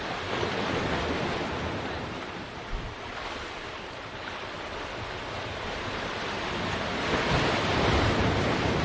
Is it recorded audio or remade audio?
remade